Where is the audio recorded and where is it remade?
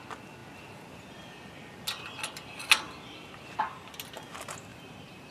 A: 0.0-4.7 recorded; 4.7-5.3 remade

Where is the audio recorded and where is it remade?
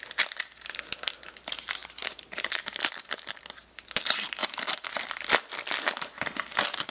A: 0.0-1.8 recorded; 1.8-4.0 remade; 4.0-6.9 recorded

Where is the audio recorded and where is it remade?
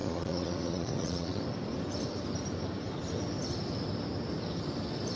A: 0.0-1.4 remade; 1.4-5.1 recorded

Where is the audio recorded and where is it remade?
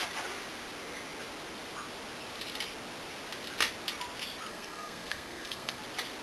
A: 0.0-4.5 recorded; 4.5-5.8 remade; 5.8-6.2 recorded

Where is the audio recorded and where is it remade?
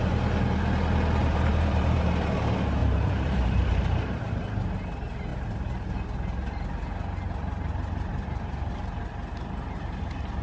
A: 0.0-1.2 recorded; 1.2-2.0 remade; 2.0-2.8 recorded; 2.8-4.7 remade; 4.7-10.4 recorded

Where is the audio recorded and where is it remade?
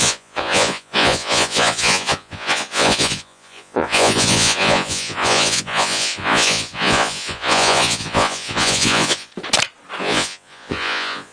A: 0.0-9.3 remade; 9.3-10.0 recorded; 10.0-11.3 remade